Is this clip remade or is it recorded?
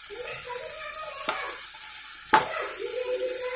recorded